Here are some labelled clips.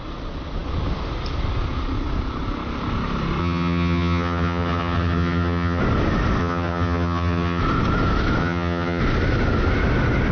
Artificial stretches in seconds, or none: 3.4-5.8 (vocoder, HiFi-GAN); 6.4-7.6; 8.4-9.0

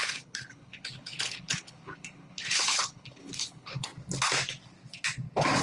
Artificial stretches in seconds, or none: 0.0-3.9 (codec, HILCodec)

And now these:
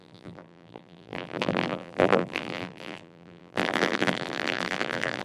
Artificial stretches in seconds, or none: 0.0-5.2 (vocoder, BigVGAN v2)

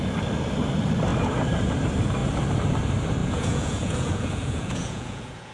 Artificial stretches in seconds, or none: 3.2-5.5 (vocoder, Vocos)

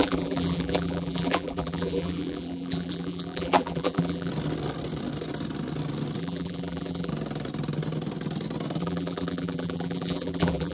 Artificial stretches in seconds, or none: 0.0-4.3 (vocoder, BigVGAN v2); 6.2-7.1; 8.8-10.7